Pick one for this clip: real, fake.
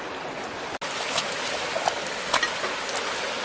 real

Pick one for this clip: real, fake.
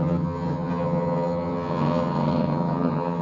fake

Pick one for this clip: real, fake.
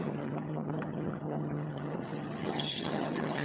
fake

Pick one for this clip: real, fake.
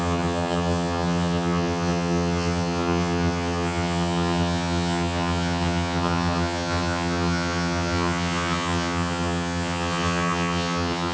fake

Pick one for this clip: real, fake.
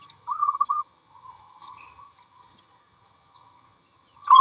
fake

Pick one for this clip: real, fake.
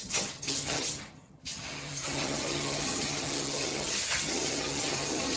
fake